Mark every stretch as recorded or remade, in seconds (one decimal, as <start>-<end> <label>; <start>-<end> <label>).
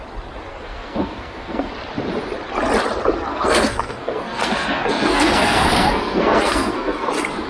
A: 0.0-0.5 recorded; 0.5-1.7 remade; 1.7-3.3 recorded; 3.3-7.1 remade; 7.1-7.5 recorded